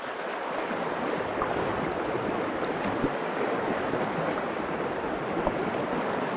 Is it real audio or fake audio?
real